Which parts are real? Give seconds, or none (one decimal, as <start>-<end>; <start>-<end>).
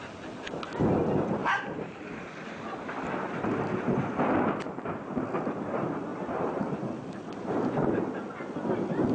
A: 0.0-1.4; 2.0-6.1; 7.7-9.1